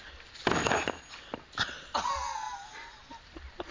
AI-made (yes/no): no